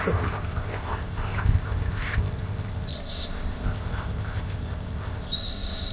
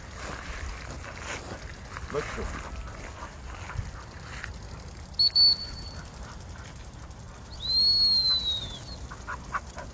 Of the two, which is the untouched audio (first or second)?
second